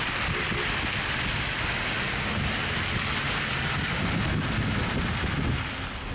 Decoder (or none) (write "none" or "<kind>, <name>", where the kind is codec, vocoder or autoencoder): none